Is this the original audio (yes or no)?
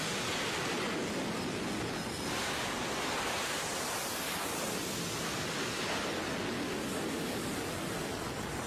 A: yes